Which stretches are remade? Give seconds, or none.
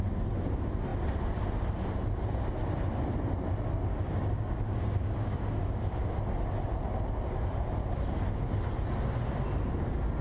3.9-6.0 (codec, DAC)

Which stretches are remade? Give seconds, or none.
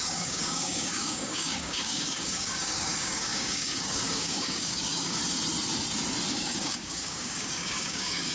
0.0-5.2 (codec, DAC); 6.3-8.3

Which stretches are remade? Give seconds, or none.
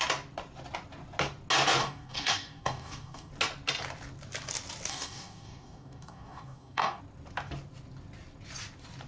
1.8-3.3 (codec, DAC); 4.9-7.0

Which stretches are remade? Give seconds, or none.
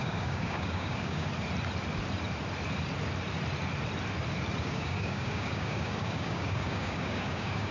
0.0-1.3 (codec, DAC); 4.6-7.7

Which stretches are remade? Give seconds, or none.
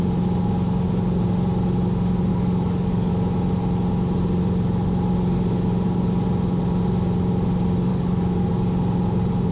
2.3-3.1 (codec, DAC); 7.9-8.5